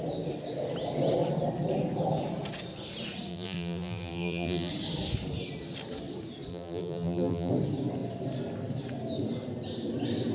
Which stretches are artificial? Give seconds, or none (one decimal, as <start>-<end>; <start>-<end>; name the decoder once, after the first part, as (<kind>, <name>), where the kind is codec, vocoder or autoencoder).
3.3-4.7 (vocoder, BigVGAN v2); 6.5-7.5